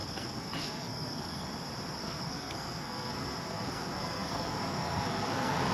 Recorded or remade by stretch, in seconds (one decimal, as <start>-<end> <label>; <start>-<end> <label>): 0.0-1.5 remade; 1.5-2.0 recorded; 2.0-5.7 remade